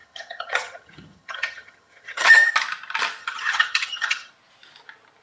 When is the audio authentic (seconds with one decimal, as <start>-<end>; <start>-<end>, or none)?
2.5-3.2; 4.3-5.2

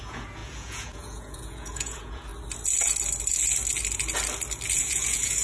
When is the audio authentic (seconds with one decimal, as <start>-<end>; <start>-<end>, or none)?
2.3-4.8